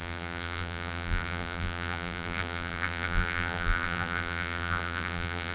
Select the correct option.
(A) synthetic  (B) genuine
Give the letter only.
A